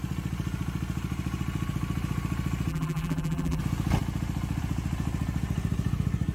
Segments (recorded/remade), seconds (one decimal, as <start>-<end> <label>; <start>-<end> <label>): 0.0-2.7 recorded; 2.7-3.6 remade; 3.6-6.3 recorded